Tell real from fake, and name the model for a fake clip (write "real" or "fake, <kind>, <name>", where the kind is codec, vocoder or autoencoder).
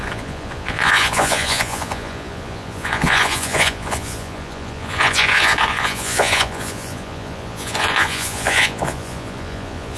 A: fake, vocoder, Vocos